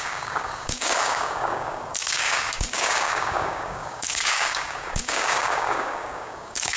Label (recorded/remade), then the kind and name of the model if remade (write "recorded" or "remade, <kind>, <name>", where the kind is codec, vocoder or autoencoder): remade, codec, DAC